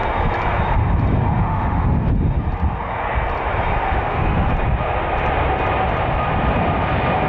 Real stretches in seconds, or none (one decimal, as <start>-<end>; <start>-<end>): 0.0-1.4; 2.1-3.9; 4.5-7.3